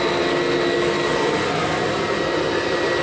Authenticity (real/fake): real